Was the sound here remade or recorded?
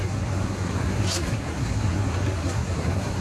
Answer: remade